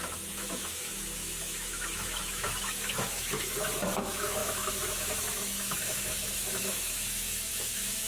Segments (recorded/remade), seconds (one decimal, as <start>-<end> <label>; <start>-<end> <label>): 0.0-8.1 remade